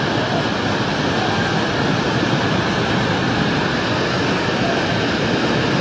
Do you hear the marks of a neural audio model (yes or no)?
no